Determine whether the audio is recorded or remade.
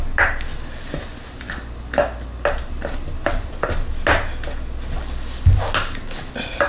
recorded